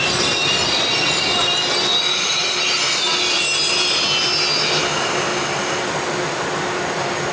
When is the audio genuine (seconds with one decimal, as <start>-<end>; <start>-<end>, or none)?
0.0-7.3